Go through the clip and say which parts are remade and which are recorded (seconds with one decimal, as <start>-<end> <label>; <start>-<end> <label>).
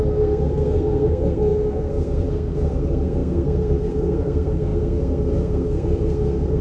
0.0-6.6 remade